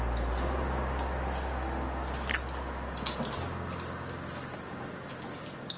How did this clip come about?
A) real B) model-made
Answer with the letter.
A